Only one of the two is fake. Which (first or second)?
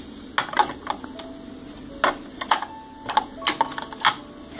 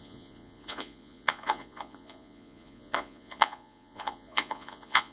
second